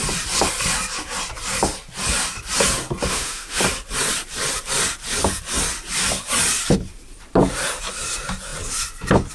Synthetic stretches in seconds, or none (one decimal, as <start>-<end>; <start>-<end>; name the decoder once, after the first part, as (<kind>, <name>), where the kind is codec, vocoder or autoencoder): 3.1-3.6 (autoencoder, DAC-VAE)

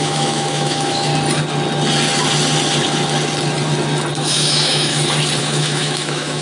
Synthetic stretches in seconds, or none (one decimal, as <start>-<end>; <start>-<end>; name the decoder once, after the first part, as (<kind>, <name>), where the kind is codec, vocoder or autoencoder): 0.0-1.1 (autoencoder, DAC-VAE); 4.2-4.9; 5.4-6.4